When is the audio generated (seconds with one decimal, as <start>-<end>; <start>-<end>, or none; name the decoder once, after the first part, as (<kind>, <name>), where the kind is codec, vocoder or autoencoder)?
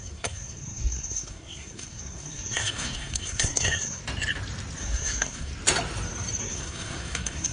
0.0-4.0 (codec, SNAC); 4.8-5.5; 6.4-7.5